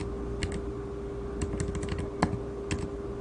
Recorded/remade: recorded